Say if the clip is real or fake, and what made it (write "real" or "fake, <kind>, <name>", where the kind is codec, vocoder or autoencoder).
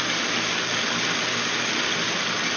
real